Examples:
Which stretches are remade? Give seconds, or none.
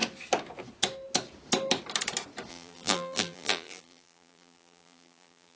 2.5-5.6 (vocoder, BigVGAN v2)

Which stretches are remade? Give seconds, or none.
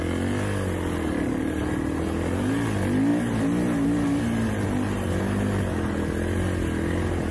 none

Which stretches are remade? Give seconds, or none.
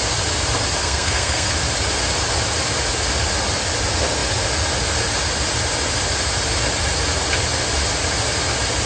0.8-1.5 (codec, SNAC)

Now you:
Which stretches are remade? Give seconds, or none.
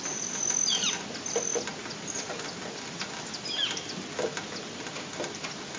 none